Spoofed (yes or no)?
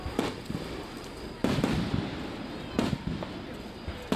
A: no